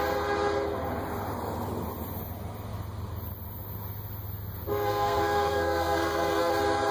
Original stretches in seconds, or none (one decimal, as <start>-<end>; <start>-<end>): 0.0-4.7; 6.5-6.9